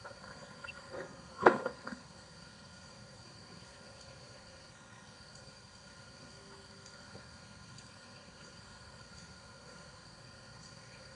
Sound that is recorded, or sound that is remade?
remade